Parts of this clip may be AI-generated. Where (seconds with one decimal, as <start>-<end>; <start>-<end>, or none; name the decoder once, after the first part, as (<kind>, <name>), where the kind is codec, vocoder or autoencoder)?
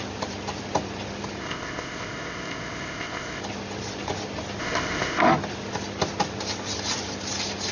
1.4-3.4 (codec, ZipCodec); 4.6-5.2